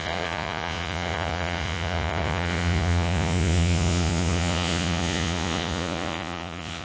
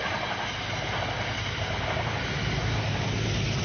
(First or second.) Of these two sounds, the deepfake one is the first